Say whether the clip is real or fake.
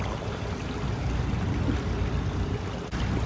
real